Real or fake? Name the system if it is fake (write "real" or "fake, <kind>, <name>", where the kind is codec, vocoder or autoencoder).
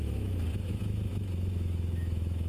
fake, autoencoder, DAC-VAE